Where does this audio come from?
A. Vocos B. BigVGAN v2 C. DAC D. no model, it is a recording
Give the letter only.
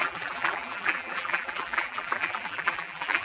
B